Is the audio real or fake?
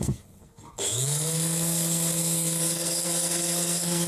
fake